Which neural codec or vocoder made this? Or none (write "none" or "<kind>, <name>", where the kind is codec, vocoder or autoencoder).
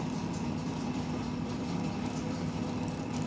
vocoder, BigVGAN v2